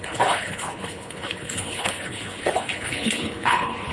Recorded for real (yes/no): no